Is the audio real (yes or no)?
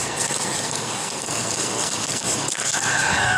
no